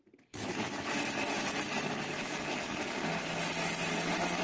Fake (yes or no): no